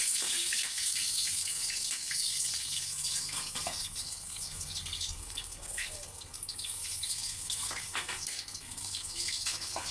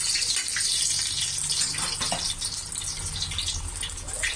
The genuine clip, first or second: second